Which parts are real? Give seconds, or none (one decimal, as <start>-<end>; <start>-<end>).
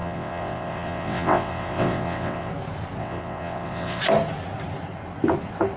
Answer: 2.5-3.0; 4.0-5.8